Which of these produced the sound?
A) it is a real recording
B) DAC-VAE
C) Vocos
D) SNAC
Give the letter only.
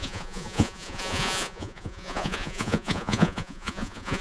C